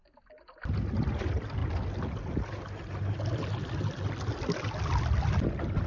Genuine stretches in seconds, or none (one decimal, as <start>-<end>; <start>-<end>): 0.0-5.9

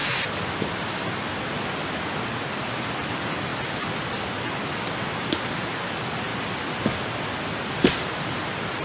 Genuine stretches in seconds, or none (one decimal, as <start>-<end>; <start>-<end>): 0.0-8.8

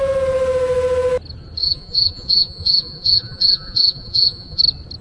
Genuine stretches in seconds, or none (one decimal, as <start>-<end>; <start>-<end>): 0.0-1.6; 4.6-5.0

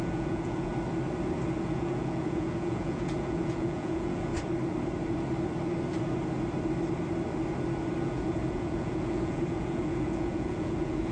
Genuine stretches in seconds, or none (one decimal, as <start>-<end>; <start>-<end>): 0.7-1.6; 4.3-8.0